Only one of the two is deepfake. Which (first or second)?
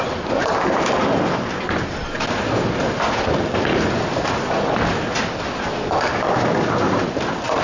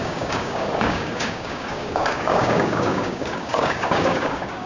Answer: second